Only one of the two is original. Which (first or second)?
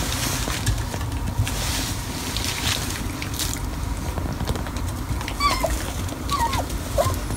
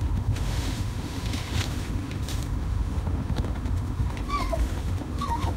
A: first